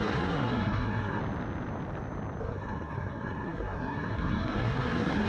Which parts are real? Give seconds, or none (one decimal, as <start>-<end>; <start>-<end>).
1.2-2.4